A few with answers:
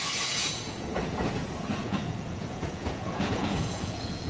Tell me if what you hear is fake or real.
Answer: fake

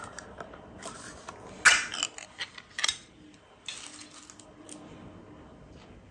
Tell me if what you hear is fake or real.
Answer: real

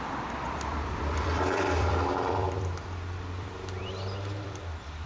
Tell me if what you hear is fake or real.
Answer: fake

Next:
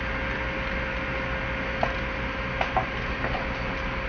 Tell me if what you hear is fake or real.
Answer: real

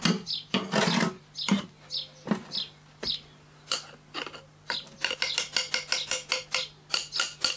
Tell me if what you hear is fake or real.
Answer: real